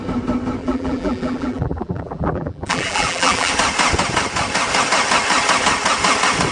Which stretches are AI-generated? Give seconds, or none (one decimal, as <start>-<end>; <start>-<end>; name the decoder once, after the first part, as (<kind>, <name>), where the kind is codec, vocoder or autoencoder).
0.6-3.5 (vocoder, BigVGAN v2)